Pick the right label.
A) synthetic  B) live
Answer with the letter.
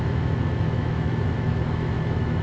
A